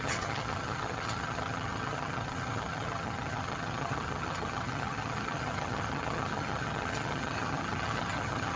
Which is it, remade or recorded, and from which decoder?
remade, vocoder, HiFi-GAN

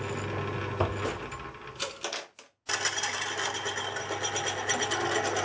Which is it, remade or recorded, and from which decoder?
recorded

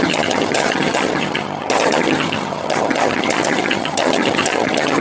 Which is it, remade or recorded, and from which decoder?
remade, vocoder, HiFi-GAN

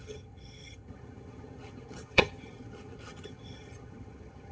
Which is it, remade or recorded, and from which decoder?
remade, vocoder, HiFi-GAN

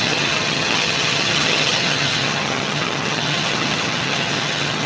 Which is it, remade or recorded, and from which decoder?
remade, vocoder, HiFi-GAN